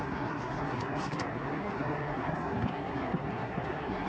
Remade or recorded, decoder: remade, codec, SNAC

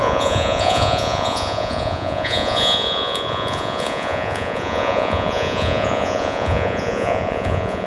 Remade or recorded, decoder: remade, vocoder, Vocos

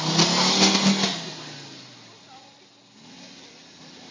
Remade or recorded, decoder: recorded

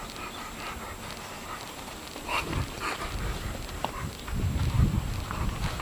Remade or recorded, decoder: recorded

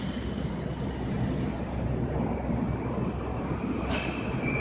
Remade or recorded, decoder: recorded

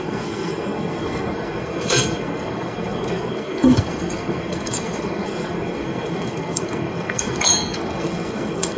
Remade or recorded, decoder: remade, codec, SNAC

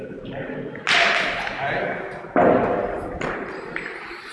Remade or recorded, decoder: recorded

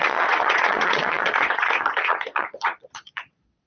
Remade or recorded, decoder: remade, vocoder, Vocos